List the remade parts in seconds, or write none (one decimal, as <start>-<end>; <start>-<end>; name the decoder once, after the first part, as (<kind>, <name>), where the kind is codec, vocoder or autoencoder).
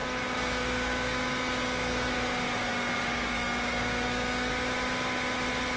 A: 0.0-2.1 (codec, DAC); 2.7-4.5